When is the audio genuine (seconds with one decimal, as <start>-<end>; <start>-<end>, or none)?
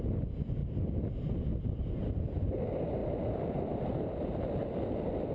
0.0-1.5; 2.6-3.0; 4.1-5.3